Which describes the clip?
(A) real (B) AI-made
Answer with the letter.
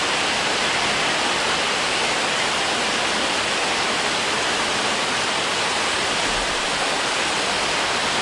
A